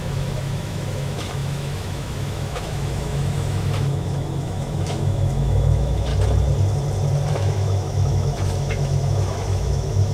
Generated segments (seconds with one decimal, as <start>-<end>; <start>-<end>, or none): 0.0-6.1; 7.3-10.1